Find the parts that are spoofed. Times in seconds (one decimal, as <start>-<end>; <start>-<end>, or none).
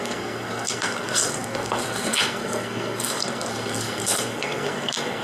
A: 0.0-5.2